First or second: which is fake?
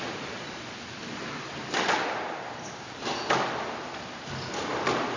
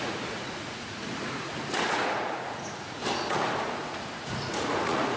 second